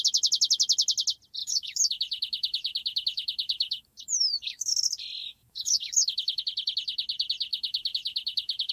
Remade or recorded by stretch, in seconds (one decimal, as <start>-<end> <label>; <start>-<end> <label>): 0.0-1.4 recorded; 1.4-4.7 remade; 4.7-5.2 recorded; 5.2-6.4 remade; 6.4-7.5 recorded; 7.5-8.7 remade